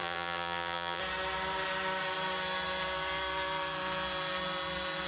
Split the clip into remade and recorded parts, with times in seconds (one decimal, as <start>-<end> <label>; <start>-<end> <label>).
0.0-1.0 remade; 1.0-5.1 recorded